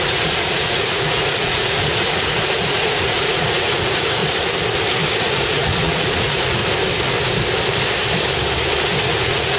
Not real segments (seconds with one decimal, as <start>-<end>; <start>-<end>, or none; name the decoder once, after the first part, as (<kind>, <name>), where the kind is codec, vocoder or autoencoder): 0.0-4.2 (vocoder, Vocos); 5.2-6.6; 9.1-9.6